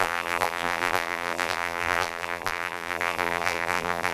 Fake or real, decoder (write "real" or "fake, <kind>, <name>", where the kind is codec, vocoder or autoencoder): fake, vocoder, BigVGAN v2